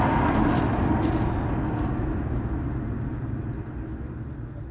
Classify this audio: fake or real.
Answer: real